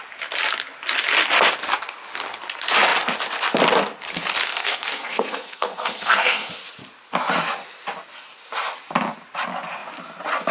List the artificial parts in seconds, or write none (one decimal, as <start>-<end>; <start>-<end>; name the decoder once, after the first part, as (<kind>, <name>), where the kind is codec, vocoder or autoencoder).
4.5-6.5 (codec, SNAC)